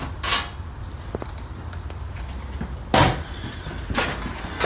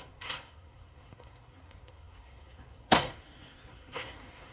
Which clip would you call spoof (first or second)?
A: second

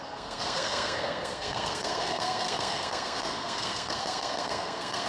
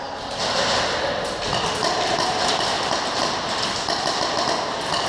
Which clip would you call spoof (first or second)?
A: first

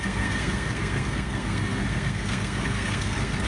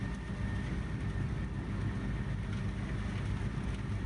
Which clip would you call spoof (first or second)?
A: first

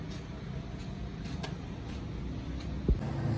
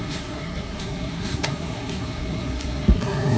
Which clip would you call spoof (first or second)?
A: second